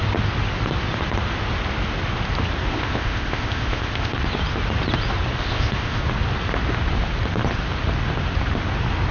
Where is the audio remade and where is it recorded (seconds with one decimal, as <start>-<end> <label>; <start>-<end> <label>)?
0.0-2.7 recorded; 2.7-4.2 remade; 4.2-5.4 recorded; 5.4-6.0 remade; 6.0-9.1 recorded